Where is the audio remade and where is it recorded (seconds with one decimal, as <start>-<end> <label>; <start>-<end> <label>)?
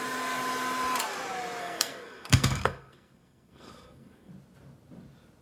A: 0.0-1.6 recorded; 1.6-4.3 remade; 4.3-5.4 recorded